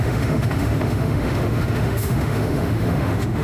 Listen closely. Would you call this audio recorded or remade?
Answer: remade